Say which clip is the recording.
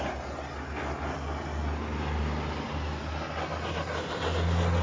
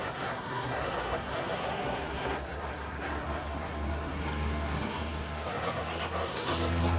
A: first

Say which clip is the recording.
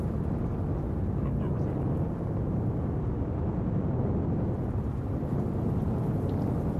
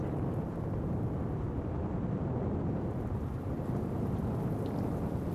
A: first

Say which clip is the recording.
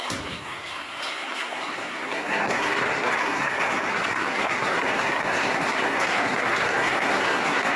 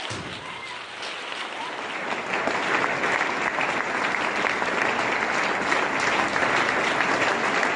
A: second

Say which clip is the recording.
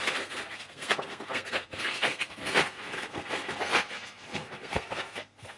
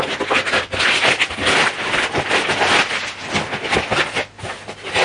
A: second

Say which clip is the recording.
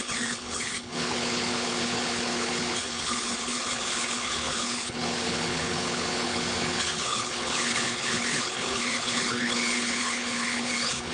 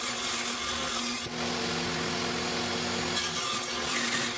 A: second